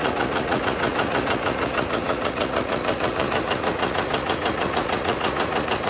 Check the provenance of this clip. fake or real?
fake